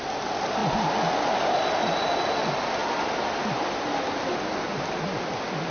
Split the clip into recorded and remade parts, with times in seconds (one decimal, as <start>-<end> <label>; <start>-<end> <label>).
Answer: 0.0-5.7 recorded